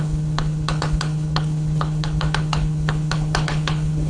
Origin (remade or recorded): remade